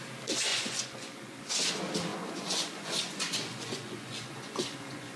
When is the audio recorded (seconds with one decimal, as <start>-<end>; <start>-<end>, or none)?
0.0-0.5; 1.5-2.1